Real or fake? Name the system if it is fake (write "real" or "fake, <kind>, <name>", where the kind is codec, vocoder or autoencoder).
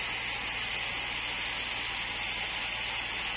real